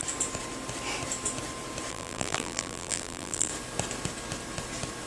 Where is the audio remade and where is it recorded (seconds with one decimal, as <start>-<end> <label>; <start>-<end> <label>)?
0.0-1.9 recorded; 1.9-3.5 remade; 3.5-5.1 recorded